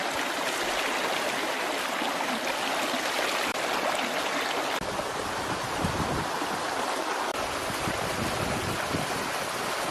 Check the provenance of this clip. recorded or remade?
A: recorded